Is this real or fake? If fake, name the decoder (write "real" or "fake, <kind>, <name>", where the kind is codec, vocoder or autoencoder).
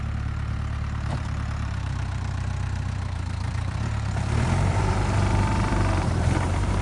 fake, vocoder, BigVGAN v2